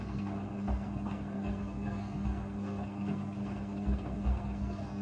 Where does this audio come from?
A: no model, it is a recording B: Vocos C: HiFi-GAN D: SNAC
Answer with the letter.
D